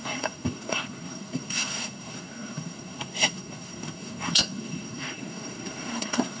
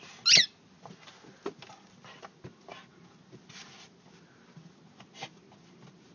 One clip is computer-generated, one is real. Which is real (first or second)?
second